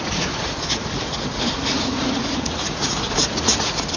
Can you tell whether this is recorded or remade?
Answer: remade